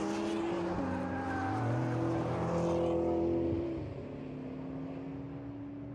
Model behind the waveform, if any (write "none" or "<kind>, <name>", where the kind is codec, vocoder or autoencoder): none